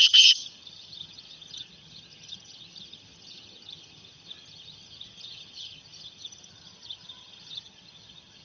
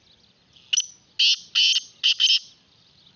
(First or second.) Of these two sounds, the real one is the second